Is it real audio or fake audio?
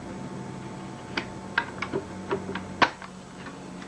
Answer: real